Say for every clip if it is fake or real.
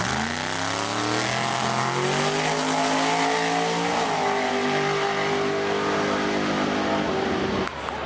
real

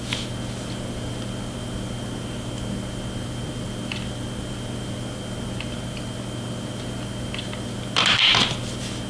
real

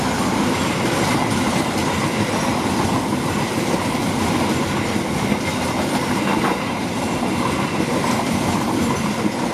real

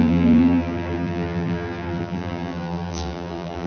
fake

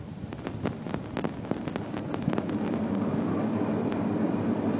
fake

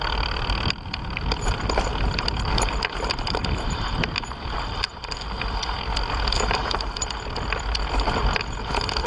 fake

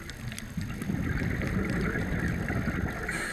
real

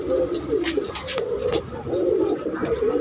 real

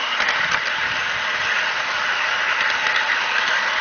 real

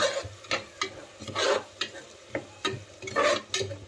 real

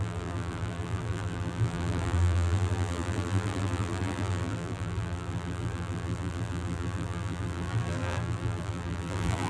fake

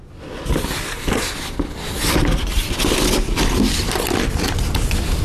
real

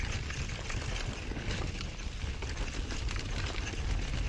real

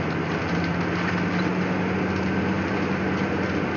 real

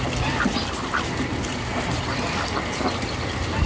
real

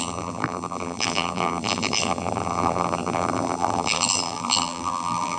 fake